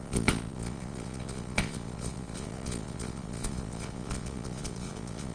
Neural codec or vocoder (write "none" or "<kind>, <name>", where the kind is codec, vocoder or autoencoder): vocoder, Vocos